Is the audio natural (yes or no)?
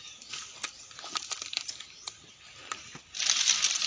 yes